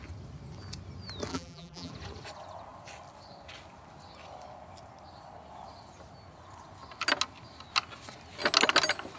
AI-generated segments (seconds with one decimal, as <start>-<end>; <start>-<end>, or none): 1.3-1.9